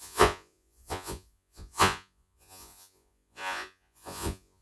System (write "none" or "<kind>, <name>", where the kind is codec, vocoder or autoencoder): vocoder, Vocos